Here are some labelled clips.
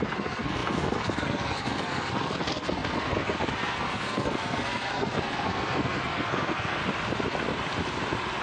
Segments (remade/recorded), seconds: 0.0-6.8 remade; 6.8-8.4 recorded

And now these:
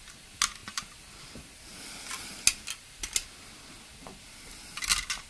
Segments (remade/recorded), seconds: 0.0-5.3 recorded

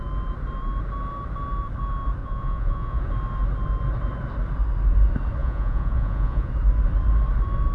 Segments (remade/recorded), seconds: 0.0-2.2 recorded; 2.2-3.0 remade; 3.0-5.4 recorded; 5.4-6.5 remade; 6.5-7.7 recorded

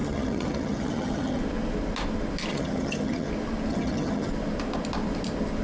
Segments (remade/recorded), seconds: 0.0-1.4 remade; 1.4-2.5 recorded; 2.5-3.3 remade; 3.3-3.7 recorded; 3.7-4.3 remade; 4.3-5.6 recorded

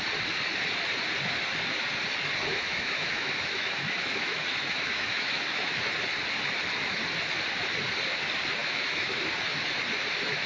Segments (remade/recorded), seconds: 0.0-2.5 recorded; 2.5-5.8 remade; 5.8-8.6 recorded; 8.6-9.2 remade; 9.2-10.5 recorded

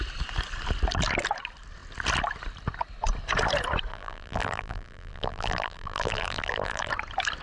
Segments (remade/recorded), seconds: 0.0-3.9 recorded; 3.9-6.9 remade; 6.9-7.4 recorded